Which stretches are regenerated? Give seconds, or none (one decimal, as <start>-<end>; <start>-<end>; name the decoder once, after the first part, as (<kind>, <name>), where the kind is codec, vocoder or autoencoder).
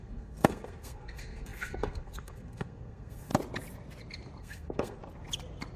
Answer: 0.0-3.3 (codec, SNAC); 4.4-5.0